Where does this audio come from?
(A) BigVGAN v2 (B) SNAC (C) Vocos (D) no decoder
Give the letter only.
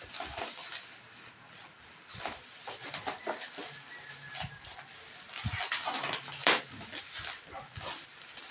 A